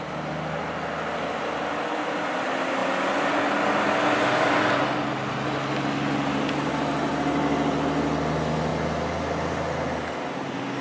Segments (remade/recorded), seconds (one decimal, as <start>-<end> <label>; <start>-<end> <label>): 0.0-10.8 recorded